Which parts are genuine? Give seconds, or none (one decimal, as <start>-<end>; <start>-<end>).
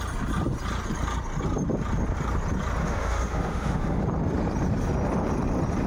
0.0-2.8; 4.0-5.9